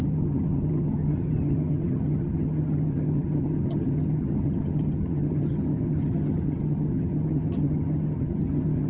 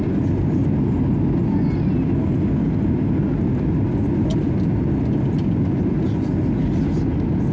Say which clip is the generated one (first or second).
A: first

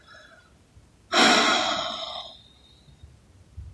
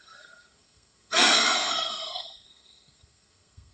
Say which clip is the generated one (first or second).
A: second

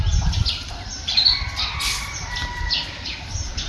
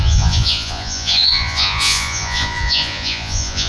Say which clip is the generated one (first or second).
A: second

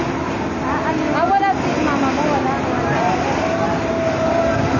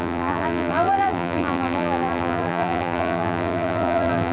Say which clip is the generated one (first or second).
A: second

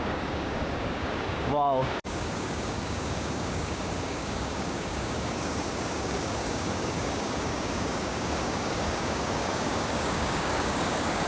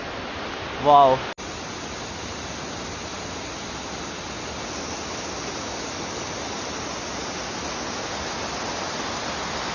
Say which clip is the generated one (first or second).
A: first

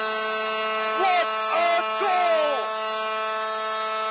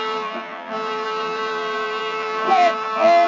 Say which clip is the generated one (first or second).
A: second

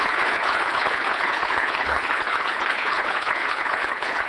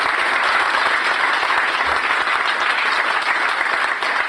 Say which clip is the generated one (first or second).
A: first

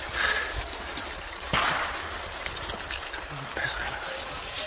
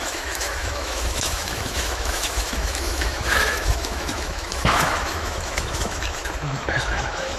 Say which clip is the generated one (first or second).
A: second